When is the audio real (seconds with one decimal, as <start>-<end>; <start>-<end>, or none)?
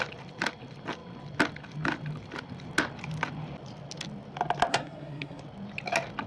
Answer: 0.0-4.7; 5.4-6.3